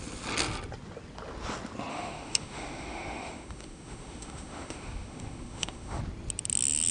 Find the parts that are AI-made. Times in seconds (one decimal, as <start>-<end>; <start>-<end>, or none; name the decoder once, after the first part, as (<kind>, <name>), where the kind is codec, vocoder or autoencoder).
1.9-6.0 (autoencoder, DAC-VAE)